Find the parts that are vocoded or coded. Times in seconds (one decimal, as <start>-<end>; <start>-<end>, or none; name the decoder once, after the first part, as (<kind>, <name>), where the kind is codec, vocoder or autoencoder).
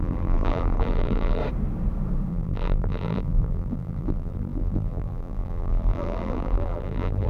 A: 0.0-1.4 (vocoder, BigVGAN v2); 2.3-7.3